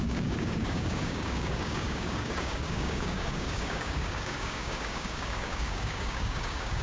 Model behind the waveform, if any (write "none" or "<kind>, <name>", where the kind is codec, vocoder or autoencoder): codec, DAC